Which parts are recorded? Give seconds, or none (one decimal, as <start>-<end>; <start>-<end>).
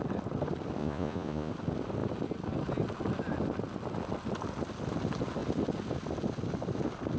0.0-0.8; 1.5-7.2